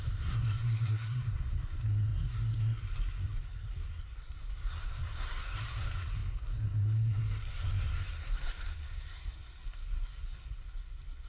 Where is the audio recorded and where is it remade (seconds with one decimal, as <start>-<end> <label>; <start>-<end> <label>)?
0.0-11.3 remade

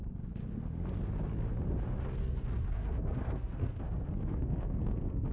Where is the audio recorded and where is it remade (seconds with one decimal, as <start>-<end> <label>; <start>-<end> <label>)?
0.0-2.2 recorded; 2.2-5.3 remade

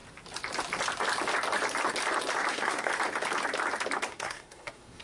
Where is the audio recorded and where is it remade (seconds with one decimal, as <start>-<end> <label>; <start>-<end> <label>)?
0.0-2.5 recorded; 2.5-2.9 remade; 2.9-4.1 recorded; 4.1-5.0 remade

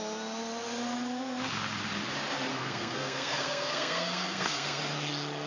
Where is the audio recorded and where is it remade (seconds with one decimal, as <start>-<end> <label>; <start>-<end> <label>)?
0.0-2.5 recorded; 2.5-4.8 remade; 4.8-5.5 recorded

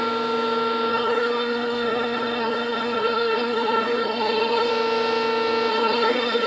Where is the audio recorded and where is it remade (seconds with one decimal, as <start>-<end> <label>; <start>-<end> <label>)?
0.0-0.9 recorded; 0.9-4.7 remade; 4.7-5.7 recorded; 5.7-6.5 remade